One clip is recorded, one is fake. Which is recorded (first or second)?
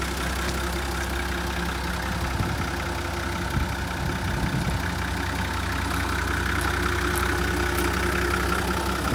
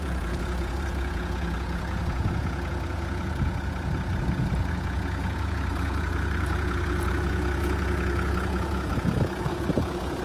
first